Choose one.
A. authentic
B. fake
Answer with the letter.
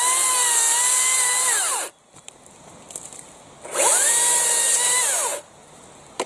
A